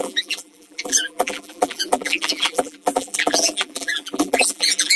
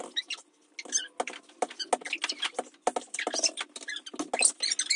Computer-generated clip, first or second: first